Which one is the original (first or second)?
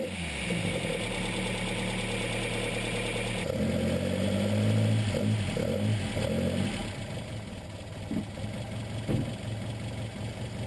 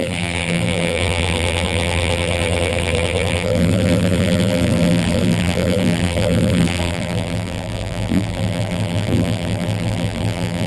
first